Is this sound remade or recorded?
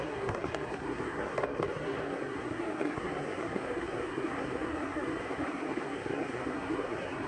remade